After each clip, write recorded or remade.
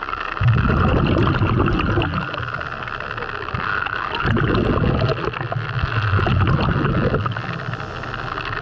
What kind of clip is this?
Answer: recorded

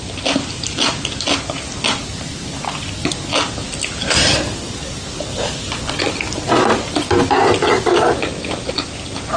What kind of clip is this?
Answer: recorded